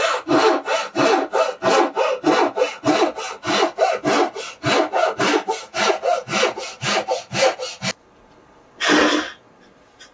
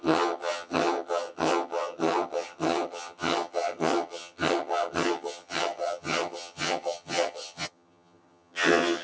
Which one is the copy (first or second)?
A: second